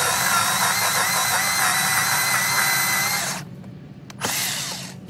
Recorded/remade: recorded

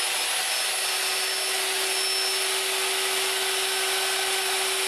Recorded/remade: recorded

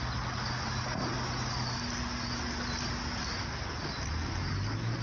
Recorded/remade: recorded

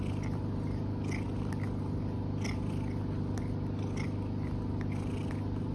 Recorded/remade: recorded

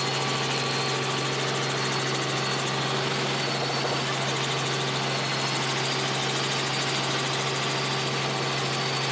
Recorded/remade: recorded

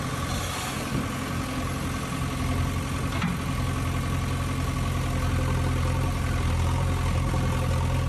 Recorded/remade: recorded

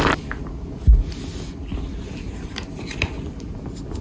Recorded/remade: recorded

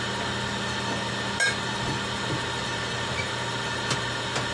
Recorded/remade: recorded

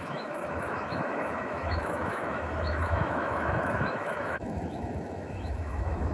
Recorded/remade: remade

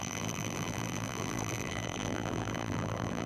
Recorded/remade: remade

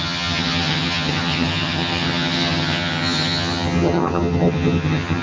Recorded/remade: remade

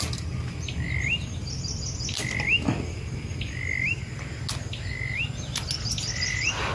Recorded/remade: recorded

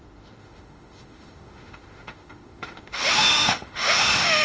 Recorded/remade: remade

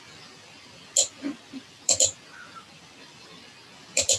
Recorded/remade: recorded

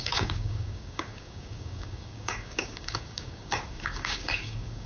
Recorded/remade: remade